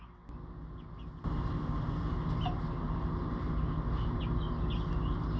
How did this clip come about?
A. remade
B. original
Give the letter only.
B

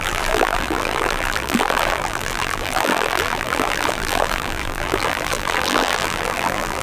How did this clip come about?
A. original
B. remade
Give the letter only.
B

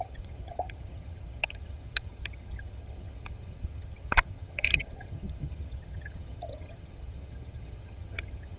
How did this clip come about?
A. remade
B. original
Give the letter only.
A